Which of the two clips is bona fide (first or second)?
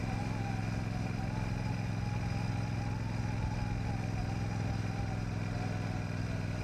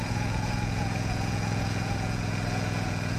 first